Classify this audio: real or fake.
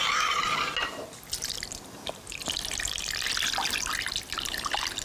real